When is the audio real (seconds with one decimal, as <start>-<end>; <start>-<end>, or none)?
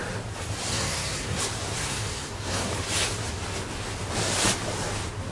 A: 0.0-0.7; 1.4-1.8; 2.7-5.3